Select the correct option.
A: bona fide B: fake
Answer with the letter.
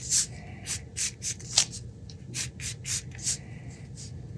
A